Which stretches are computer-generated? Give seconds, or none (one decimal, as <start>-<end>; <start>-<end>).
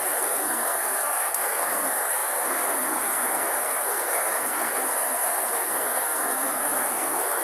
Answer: 0.0-7.4